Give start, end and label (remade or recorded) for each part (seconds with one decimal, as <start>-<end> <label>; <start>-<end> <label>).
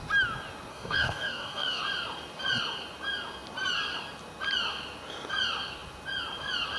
0.0-0.7 recorded; 0.7-1.8 remade; 1.8-6.8 recorded